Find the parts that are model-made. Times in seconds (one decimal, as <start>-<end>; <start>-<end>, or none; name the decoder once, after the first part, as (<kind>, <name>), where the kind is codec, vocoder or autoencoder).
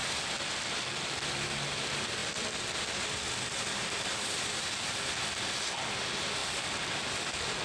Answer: none